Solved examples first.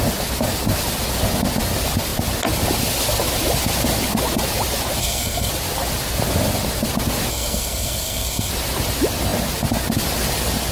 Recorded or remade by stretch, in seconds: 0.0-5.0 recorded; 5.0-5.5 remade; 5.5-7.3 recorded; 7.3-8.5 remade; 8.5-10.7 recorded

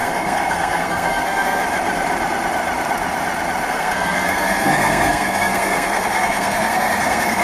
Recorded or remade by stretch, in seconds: 0.0-1.6 remade; 1.6-3.7 recorded; 3.7-7.4 remade

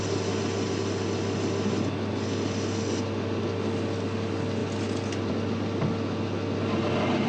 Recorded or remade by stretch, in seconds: 0.0-7.3 recorded